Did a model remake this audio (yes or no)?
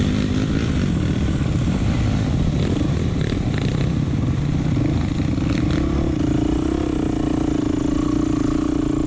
no